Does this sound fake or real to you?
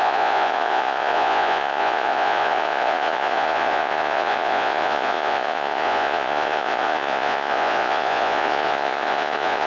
fake